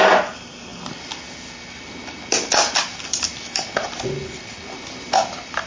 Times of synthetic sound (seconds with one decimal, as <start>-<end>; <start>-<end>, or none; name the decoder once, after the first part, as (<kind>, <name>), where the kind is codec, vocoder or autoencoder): none